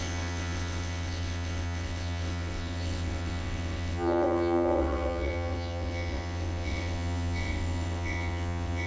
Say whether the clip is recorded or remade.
remade